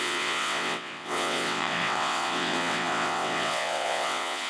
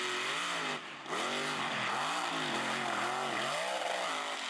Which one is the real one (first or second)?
second